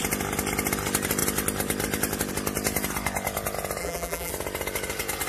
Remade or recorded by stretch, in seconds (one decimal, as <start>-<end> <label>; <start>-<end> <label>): 0.0-3.8 recorded; 3.8-4.3 remade; 4.3-5.3 recorded